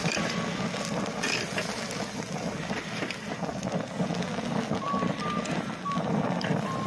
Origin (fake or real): real